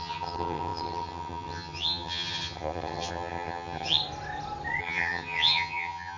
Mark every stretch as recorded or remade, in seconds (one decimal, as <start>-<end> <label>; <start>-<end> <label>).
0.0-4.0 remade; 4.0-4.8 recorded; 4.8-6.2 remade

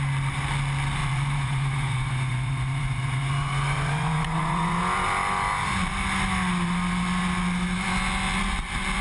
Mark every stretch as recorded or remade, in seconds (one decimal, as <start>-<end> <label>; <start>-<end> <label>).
0.0-1.0 recorded; 1.0-4.8 remade; 4.8-9.0 recorded

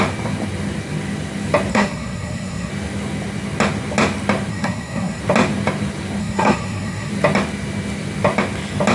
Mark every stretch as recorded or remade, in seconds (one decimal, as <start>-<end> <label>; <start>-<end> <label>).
0.0-1.7 recorded; 1.7-2.7 remade; 2.7-4.5 recorded; 4.5-5.2 remade; 5.2-6.2 recorded; 6.2-7.1 remade; 7.1-8.9 recorded

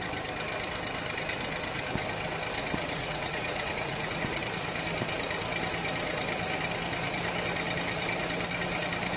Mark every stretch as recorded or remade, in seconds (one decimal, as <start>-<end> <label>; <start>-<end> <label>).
0.0-2.6 recorded; 2.6-4.4 remade; 4.4-9.2 recorded

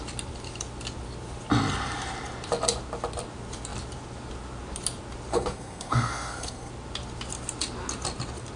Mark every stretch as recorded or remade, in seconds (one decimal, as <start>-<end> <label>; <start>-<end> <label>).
0.0-5.3 recorded; 5.3-6.7 remade; 6.7-8.6 recorded